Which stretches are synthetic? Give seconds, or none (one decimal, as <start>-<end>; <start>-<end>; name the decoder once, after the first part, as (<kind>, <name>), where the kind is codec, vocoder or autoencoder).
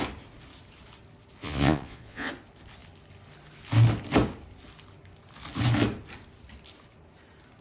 1.4-2.3 (vocoder, Vocos)